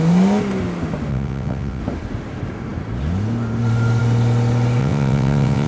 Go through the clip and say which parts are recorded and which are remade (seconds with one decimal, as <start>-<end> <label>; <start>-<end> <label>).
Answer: 0.0-1.1 recorded; 1.1-1.8 remade; 1.8-4.8 recorded; 4.8-5.7 remade